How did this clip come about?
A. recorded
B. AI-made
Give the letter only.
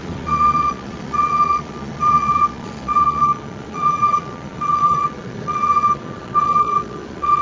B